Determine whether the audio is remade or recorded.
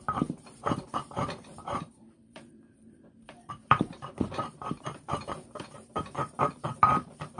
remade